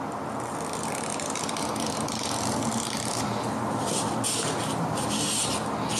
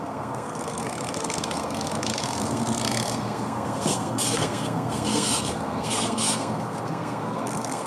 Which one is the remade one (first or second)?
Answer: second